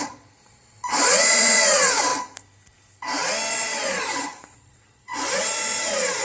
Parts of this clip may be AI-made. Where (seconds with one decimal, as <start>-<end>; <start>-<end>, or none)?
0.0-2.1; 3.5-6.2